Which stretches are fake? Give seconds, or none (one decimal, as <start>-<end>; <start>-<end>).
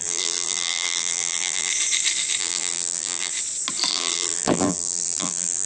0.0-1.7; 2.4-3.3; 3.9-5.7